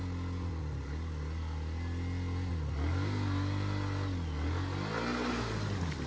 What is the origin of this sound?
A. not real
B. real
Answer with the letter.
B